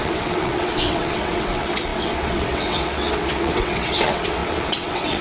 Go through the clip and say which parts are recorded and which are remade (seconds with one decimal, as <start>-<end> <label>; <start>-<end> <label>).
0.0-5.2 remade